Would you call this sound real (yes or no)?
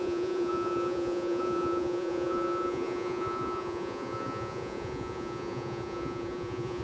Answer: no